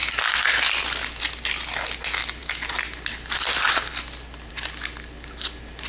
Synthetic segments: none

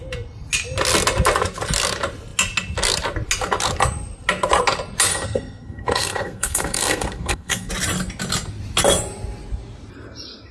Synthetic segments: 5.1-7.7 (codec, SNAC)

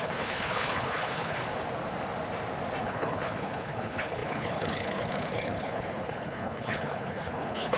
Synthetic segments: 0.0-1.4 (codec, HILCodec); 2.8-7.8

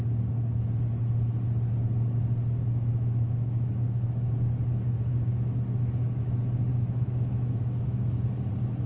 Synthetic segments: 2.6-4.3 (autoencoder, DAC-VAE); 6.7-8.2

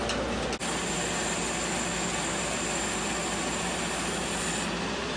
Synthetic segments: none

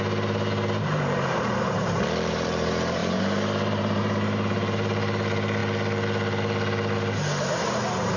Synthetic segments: 0.0-5.6 (vocoder, BigVGAN v2); 7.5-8.2